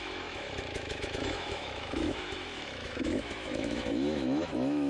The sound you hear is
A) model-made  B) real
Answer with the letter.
A